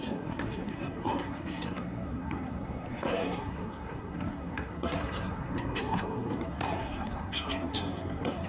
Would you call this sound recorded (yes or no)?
no